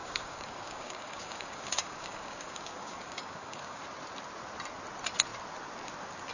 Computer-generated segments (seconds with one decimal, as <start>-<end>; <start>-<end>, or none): 0.0-3.8